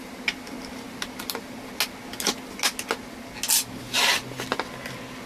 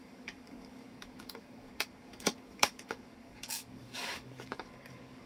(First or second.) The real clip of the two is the first